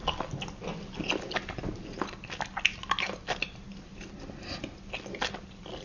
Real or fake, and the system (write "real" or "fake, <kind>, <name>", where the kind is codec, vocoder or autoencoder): real